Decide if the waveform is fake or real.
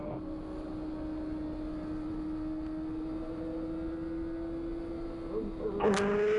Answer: real